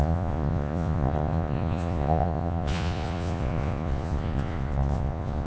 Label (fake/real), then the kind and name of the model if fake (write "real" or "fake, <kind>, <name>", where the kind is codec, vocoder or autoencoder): fake, vocoder, Vocos